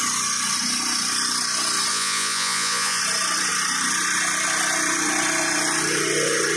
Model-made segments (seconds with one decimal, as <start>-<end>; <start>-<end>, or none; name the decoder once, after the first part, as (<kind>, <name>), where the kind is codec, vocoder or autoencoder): 1.9-3.0 (vocoder, Vocos)